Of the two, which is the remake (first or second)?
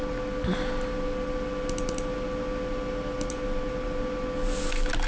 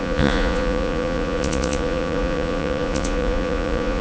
second